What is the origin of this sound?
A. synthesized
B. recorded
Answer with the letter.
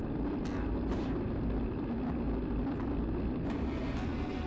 B